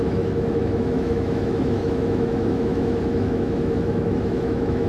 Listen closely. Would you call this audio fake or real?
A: fake